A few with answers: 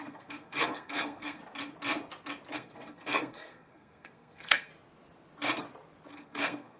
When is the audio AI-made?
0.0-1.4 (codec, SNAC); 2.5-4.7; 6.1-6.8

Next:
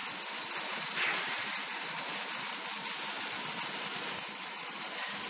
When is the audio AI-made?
none

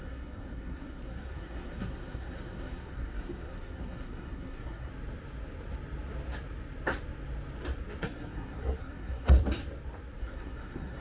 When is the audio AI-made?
0.0-4.9 (codec, SNAC); 8.0-9.4; 10.2-11.0

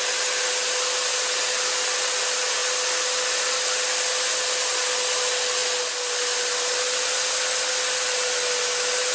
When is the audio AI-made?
none

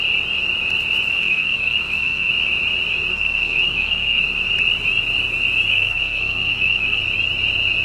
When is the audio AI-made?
1.1-2.3 (codec, SNAC); 3.1-4.2; 5.7-7.0

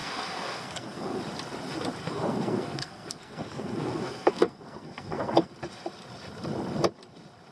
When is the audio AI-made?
0.0-1.2 (codec, SNAC); 2.0-5.5

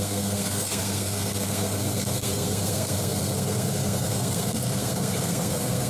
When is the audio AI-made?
0.0-5.9 (codec, SNAC)